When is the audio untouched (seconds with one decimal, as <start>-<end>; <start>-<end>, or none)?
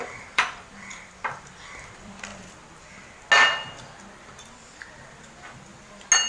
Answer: 2.3-6.3